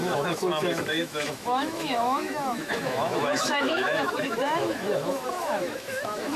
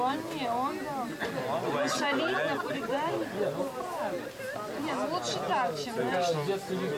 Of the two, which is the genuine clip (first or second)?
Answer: second